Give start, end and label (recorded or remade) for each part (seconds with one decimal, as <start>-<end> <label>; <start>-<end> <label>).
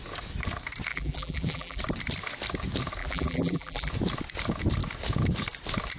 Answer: 0.0-0.9 recorded; 0.9-1.8 remade; 1.8-3.0 recorded; 3.0-3.9 remade; 3.9-6.0 recorded